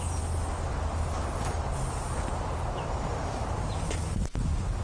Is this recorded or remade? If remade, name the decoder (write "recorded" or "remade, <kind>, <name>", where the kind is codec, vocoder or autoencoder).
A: recorded